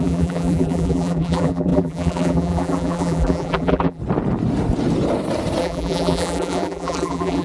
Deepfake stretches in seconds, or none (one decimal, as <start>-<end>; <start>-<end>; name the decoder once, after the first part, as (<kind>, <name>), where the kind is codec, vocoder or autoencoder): 0.0-4.0 (vocoder, BigVGAN v2); 5.6-7.4